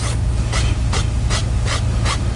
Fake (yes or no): no